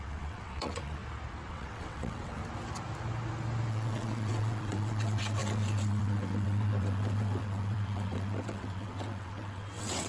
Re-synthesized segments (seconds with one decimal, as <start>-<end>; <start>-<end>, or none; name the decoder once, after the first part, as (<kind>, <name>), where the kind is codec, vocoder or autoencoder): 0.0-1.0 (vocoder, WaveNeXt); 1.5-2.4; 3.7-10.1